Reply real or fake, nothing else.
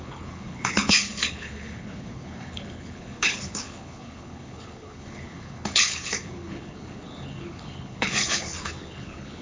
fake